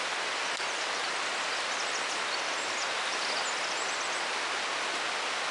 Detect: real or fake real